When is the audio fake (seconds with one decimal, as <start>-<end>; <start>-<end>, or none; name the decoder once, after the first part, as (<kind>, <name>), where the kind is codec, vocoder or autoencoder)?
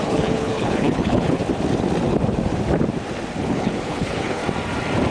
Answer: 0.0-1.4 (codec, HILCodec); 3.4-4.4